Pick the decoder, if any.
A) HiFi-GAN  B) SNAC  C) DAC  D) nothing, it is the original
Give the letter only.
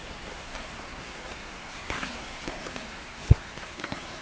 B